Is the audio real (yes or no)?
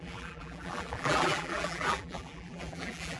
no